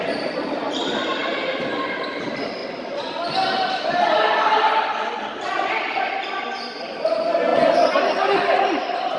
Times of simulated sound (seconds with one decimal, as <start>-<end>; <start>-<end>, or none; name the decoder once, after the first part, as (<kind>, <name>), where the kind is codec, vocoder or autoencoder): none